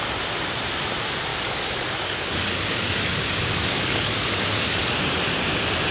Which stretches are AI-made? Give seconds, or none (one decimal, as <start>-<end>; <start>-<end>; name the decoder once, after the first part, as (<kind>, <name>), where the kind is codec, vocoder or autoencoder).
1.3-4.8 (codec, DAC)